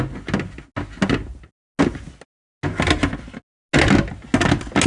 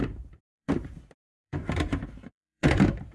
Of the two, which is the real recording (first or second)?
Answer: first